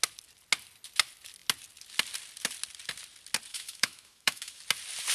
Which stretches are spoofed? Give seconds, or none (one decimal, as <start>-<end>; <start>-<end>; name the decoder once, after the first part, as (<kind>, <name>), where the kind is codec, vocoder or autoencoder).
3.5-4.6 (autoencoder, DAC-VAE)